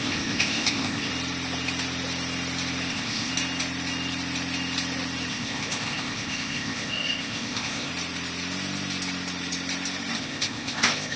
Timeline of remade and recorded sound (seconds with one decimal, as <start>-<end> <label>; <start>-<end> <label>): 0.0-1.1 remade; 1.1-2.9 recorded; 2.9-3.3 remade; 3.3-5.3 recorded; 5.3-7.9 remade; 7.9-10.2 recorded; 10.2-11.2 remade